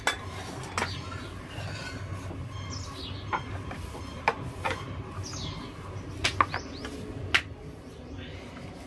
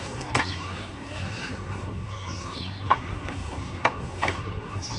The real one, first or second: first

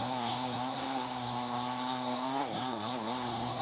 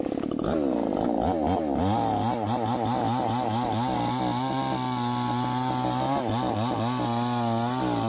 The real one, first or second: second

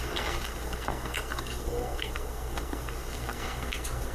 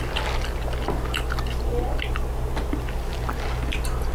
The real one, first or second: second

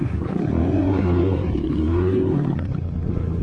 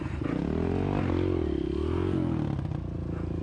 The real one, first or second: second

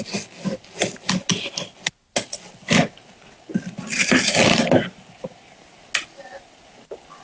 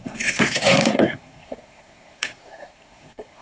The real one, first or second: first